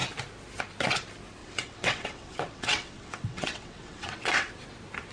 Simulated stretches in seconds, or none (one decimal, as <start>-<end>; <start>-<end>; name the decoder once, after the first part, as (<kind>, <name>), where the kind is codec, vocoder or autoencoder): 1.4-4.5 (vocoder, WaveNeXt)